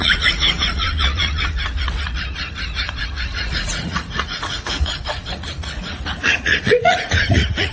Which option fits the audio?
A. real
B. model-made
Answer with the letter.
B